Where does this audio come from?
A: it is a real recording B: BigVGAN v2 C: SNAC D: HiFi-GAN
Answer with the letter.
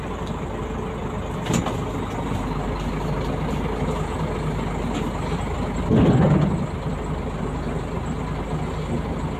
A